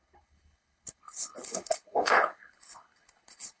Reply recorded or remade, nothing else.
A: remade